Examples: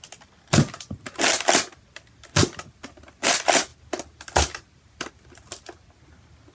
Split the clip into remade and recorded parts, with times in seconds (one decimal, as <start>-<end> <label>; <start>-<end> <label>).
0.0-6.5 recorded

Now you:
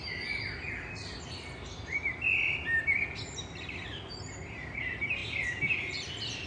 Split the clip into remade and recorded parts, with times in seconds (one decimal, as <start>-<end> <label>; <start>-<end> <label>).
0.0-6.5 recorded

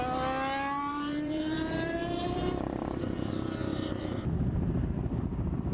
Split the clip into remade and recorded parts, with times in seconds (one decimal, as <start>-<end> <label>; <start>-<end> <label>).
0.0-0.9 recorded; 0.9-3.3 remade; 3.3-3.7 recorded; 3.7-4.2 remade; 4.2-5.7 recorded